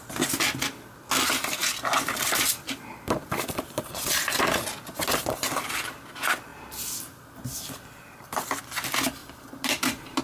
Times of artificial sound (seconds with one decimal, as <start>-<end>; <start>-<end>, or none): 1.6-4.2; 9.2-10.2